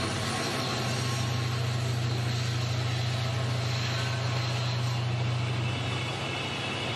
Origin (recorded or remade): recorded